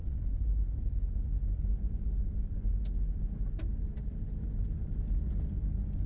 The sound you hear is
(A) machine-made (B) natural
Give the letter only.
B